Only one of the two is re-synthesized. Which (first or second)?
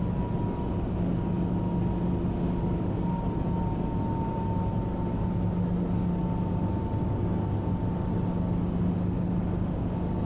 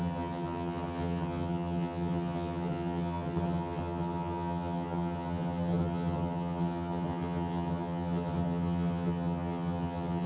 second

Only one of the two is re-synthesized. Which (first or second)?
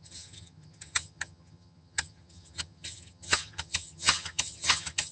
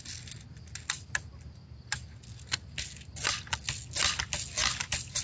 first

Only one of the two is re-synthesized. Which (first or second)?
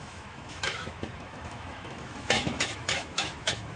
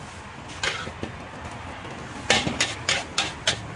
first